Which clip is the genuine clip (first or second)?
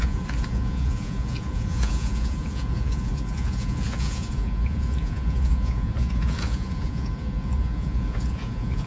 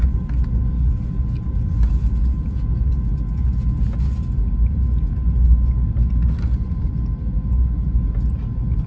second